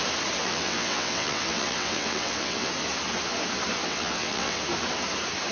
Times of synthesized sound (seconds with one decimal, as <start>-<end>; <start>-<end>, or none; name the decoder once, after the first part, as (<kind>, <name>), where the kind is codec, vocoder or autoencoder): 0.4-2.7 (vocoder, WaveNeXt); 3.9-4.6